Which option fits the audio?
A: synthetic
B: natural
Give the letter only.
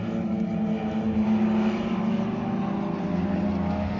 B